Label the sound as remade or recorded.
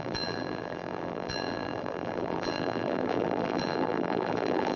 remade